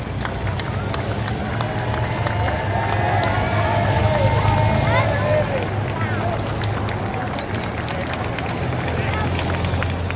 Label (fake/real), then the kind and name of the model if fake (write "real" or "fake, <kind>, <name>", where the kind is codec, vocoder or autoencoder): real